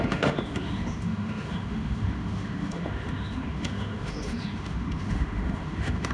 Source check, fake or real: fake